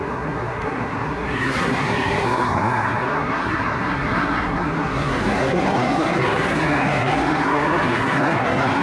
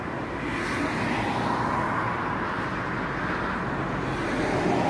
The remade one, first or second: first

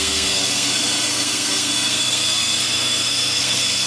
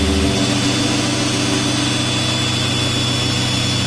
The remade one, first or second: first